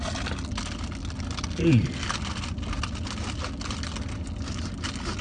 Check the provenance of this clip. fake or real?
real